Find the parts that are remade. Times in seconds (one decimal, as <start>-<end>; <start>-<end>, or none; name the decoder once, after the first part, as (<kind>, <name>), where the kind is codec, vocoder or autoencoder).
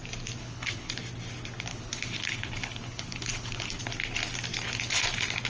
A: 0.4-0.9 (codec, HILCodec); 1.7-3.8